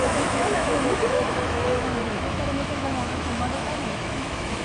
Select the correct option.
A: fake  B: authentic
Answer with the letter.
A